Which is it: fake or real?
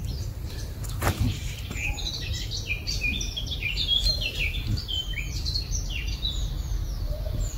fake